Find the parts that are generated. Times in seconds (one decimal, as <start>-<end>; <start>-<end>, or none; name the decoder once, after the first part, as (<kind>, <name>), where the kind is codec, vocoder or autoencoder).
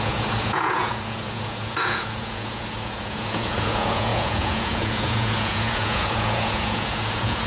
0.0-7.5 (vocoder, Vocos)